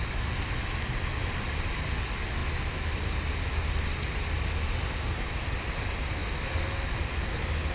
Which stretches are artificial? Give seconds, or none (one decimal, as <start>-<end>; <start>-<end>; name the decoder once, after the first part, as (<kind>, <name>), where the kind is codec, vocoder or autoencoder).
1.2-1.8 (vocoder, BigVGAN v2)